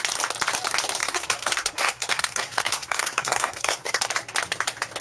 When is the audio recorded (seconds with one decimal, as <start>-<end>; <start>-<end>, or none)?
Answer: 0.0-1.0; 4.0-5.0